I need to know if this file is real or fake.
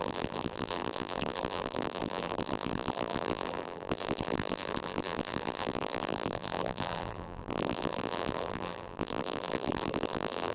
fake